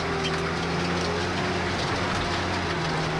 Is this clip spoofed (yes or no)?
no